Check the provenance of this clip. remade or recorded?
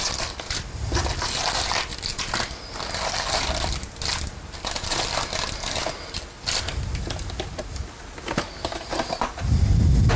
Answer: recorded